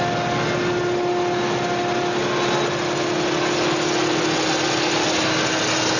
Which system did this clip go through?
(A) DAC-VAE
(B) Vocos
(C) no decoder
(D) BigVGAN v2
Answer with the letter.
C